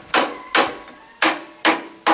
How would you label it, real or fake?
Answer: real